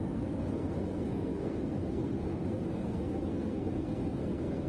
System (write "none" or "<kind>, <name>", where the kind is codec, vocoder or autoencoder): codec, SNAC